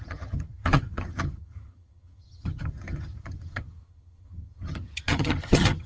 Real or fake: fake